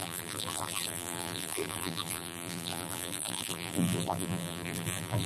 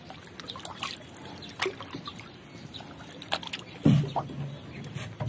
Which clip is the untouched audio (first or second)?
second